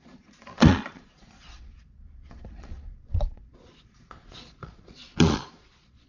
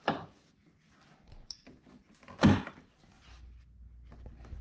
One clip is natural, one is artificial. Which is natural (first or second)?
second